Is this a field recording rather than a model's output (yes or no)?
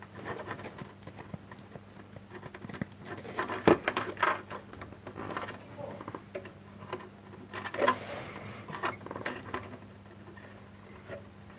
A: yes